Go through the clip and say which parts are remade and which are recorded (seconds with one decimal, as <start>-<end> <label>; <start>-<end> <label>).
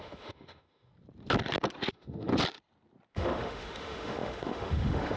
0.0-0.9 remade; 0.9-1.9 recorded; 1.9-2.3 remade; 2.3-3.1 recorded; 3.1-5.2 remade